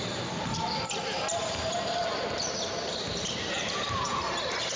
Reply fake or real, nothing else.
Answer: fake